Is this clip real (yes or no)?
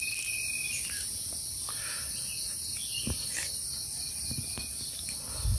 yes